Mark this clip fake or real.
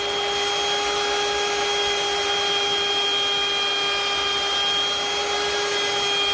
real